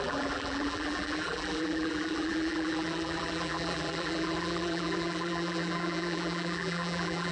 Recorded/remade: remade